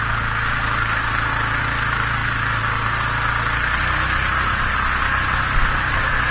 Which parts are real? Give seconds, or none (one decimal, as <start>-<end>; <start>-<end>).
0.0-6.3